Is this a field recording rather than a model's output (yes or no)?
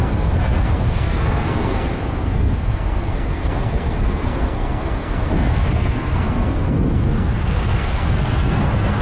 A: no